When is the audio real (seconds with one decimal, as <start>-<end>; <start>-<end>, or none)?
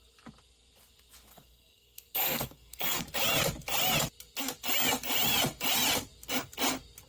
0.0-1.3; 3.0-7.1